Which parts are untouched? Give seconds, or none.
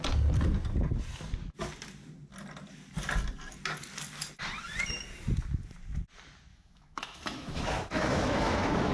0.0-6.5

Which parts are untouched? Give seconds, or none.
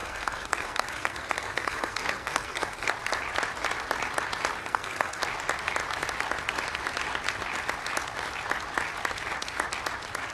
2.9-4.6; 5.2-10.3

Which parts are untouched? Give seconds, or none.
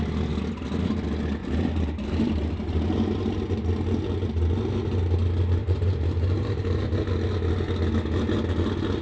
0.0-1.4; 3.3-5.6; 7.1-9.0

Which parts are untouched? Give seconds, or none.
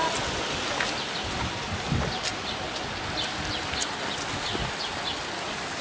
0.0-1.3; 2.3-4.3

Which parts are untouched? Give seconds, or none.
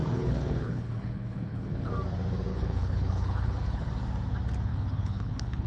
1.9-2.5; 3.9-4.7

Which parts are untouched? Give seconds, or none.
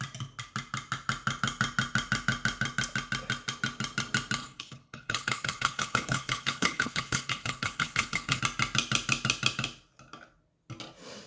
0.0-4.4; 8.4-11.3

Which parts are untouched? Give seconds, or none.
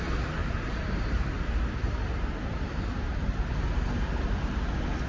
0.0-0.4; 3.5-5.1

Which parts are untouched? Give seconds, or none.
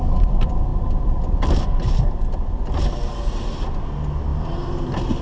0.0-5.2